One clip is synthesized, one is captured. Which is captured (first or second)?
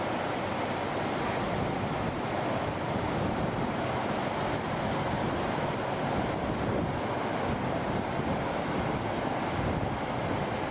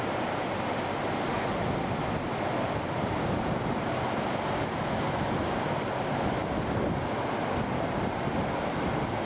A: second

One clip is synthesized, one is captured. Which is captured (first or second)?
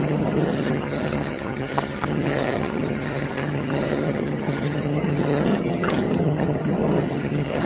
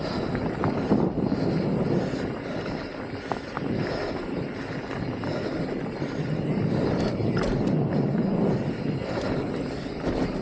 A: second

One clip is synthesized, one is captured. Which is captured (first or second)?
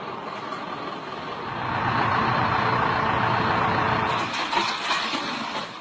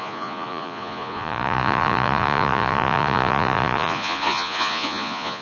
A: first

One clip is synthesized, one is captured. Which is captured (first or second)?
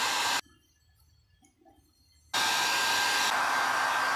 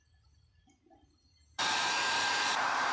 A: first